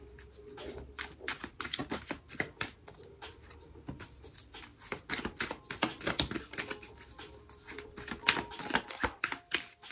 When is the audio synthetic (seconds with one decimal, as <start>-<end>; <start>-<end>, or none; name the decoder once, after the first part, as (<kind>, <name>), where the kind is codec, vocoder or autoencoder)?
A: none